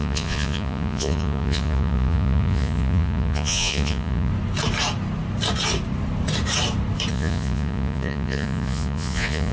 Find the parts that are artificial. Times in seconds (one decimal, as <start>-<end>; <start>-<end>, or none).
0.0-4.3; 7.1-9.5